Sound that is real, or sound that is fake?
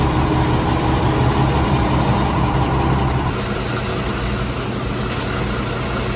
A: real